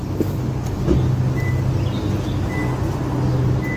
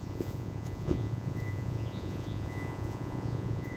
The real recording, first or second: first